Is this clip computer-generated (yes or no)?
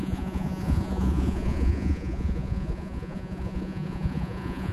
yes